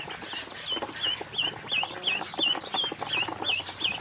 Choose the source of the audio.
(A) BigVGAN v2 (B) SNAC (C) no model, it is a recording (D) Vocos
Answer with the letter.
C